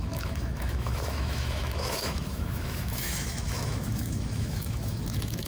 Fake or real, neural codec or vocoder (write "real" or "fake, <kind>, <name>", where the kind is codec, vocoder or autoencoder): fake, autoencoder, DAC-VAE